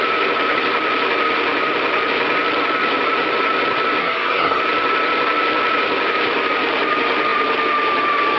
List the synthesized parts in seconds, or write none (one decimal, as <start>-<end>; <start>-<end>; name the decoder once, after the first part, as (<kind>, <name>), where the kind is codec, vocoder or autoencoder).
4.0-4.6 (codec, SNAC)